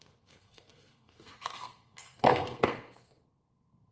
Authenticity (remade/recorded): remade